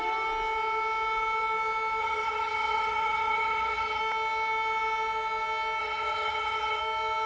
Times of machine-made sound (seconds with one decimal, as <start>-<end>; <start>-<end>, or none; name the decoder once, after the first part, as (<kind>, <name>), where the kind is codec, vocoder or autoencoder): 2.0-4.0 (vocoder, HiFi-GAN); 5.8-6.8